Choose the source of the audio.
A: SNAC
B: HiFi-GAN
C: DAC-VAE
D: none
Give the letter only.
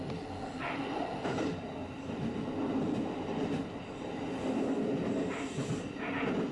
D